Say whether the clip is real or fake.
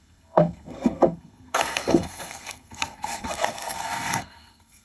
fake